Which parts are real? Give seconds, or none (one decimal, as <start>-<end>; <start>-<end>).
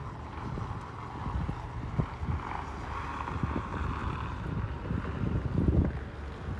0.0-4.0; 5.0-6.6